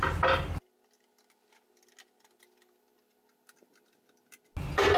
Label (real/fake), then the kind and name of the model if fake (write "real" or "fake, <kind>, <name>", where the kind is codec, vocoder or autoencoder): real